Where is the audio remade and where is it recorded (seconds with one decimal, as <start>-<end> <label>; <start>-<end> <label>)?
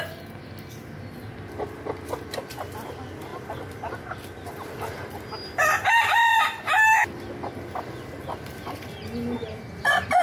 0.0-10.2 recorded